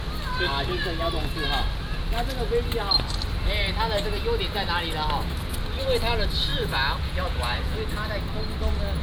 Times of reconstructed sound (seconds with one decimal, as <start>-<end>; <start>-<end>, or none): 6.5-8.1